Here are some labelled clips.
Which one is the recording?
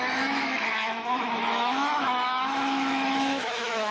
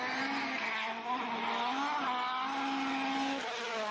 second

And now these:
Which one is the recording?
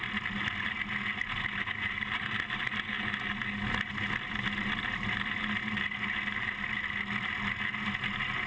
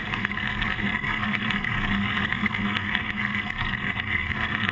first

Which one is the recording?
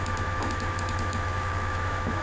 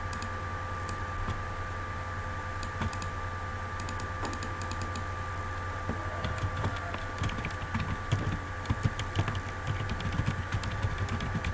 second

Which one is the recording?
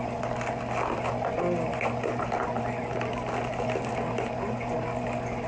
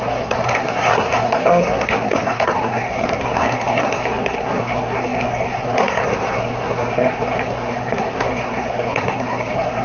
first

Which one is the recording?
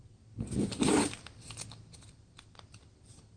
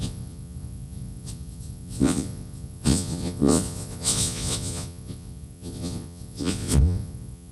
first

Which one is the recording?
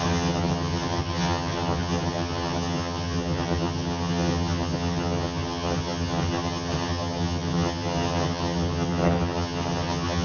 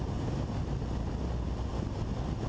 second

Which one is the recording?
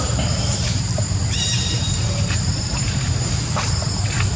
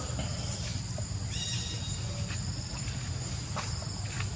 second